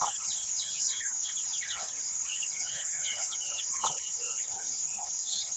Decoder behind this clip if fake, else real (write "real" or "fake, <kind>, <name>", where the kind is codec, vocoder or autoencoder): fake, codec, HILCodec